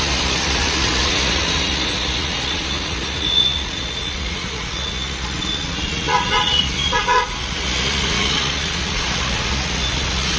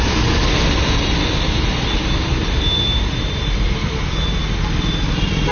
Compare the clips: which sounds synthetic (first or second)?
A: first